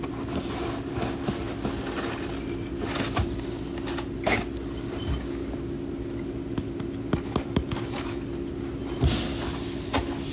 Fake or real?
real